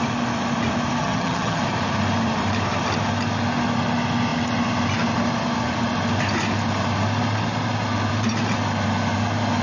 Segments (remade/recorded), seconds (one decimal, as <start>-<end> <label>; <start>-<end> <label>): 0.0-1.0 recorded; 1.0-1.6 remade; 1.6-9.6 recorded